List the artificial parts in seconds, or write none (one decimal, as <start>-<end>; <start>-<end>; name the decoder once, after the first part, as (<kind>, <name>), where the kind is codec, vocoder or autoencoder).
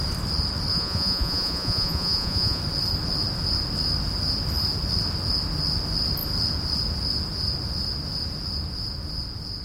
0.7-2.6 (vocoder, Vocos)